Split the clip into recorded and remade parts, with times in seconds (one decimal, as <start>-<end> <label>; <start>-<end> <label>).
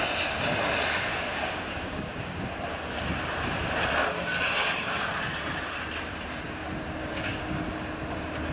0.0-1.1 recorded; 1.1-2.4 remade; 2.4-7.0 recorded; 7.0-7.6 remade; 7.6-8.5 recorded